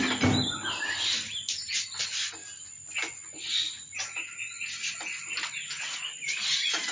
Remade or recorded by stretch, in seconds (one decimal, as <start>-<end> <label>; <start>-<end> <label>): 0.0-6.9 recorded